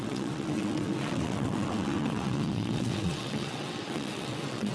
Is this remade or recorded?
remade